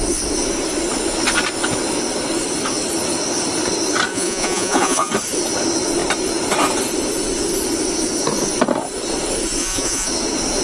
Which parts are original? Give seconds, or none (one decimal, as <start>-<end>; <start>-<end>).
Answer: 0.0-4.1; 5.1-9.6; 10.1-10.6